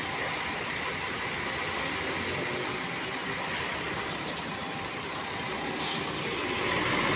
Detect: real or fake real